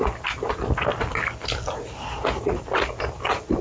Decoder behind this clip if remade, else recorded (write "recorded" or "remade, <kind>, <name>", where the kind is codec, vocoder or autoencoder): recorded